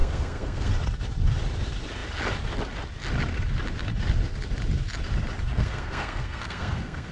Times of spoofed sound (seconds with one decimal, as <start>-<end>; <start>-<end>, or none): 0.0-0.7; 5.5-7.1